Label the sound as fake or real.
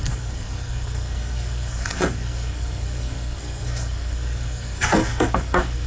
fake